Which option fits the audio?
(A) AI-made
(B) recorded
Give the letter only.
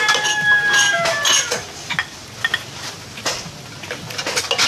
B